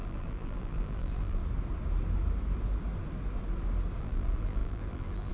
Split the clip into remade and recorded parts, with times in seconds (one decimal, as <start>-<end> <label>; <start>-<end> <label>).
0.0-1.4 remade; 1.4-4.0 recorded; 4.0-5.3 remade

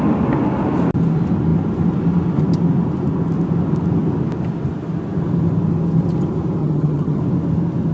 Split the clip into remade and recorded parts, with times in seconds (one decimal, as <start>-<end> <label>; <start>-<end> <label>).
0.0-6.6 recorded; 6.6-7.2 remade; 7.2-7.9 recorded

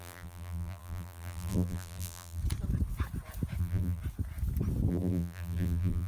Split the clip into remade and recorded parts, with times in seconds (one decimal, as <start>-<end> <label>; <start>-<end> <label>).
0.0-2.4 remade; 2.4-3.6 recorded; 3.6-4.0 remade; 4.0-4.9 recorded; 4.9-6.1 remade

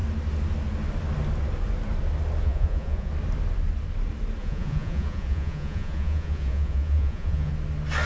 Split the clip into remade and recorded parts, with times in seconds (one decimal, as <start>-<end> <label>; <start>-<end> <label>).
0.0-2.4 recorded; 2.4-3.1 remade; 3.1-4.4 recorded; 4.4-7.5 remade; 7.5-8.1 recorded

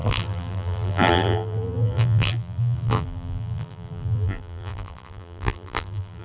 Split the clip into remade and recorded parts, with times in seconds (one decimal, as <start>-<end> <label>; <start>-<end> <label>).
0.0-6.2 remade

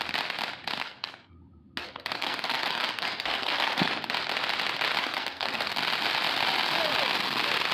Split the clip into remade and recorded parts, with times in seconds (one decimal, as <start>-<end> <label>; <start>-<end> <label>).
0.0-0.8 recorded; 0.8-1.3 remade; 1.3-1.8 recorded; 1.8-4.0 remade; 4.0-5.0 recorded; 5.0-5.7 remade; 5.7-7.7 recorded

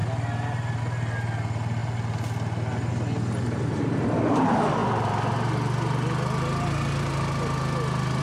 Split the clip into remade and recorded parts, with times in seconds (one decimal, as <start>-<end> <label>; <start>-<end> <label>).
0.0-8.2 recorded

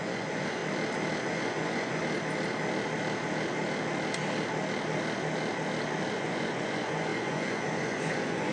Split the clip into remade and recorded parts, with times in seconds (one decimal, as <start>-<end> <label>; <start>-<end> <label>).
0.0-0.6 remade; 0.6-1.3 recorded; 1.3-2.0 remade; 2.0-6.1 recorded; 6.1-8.5 remade